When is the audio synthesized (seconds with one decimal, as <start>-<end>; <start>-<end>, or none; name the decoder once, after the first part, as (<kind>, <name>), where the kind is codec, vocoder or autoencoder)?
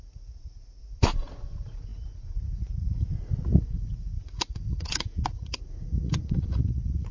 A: 0.0-7.1 (vocoder, Vocos)